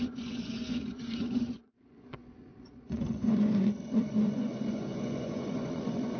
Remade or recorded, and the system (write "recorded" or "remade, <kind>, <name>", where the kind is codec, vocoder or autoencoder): remade, vocoder, Vocos